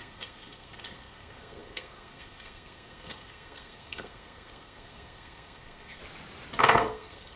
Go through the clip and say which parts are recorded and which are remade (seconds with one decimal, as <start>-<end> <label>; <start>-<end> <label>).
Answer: 0.0-6.0 remade; 6.0-6.6 recorded; 6.6-7.4 remade